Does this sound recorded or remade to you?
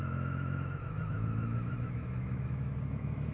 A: remade